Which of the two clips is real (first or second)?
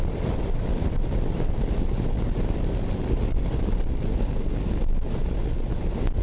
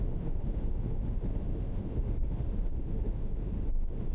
first